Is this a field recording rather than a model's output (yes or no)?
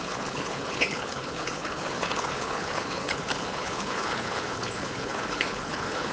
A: no